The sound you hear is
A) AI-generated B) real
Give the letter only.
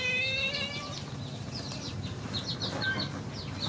B